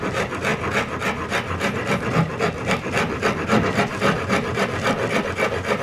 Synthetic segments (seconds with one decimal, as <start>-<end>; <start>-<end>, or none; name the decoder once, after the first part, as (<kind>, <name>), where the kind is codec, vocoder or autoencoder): none